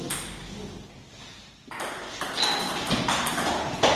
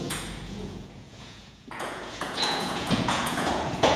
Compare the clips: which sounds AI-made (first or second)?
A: second